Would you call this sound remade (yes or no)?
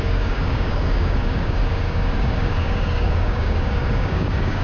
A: yes